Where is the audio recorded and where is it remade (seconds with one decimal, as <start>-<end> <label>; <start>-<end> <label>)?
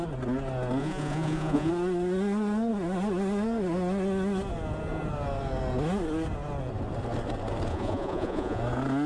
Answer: 0.0-0.8 recorded; 0.8-1.7 remade; 1.7-7.7 recorded; 7.7-8.6 remade; 8.6-9.1 recorded